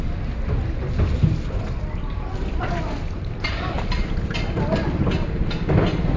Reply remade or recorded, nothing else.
recorded